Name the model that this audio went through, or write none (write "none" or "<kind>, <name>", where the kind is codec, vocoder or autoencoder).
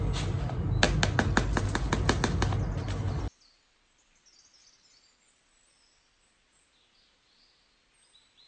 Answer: none